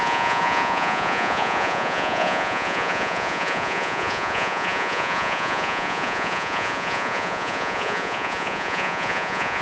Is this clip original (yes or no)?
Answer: no